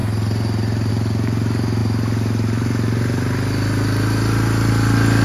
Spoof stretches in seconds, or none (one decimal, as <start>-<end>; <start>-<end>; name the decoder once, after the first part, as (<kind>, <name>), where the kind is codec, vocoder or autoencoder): none